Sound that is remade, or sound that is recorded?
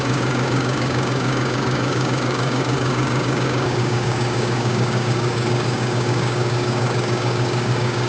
remade